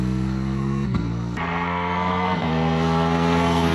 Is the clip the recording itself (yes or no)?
no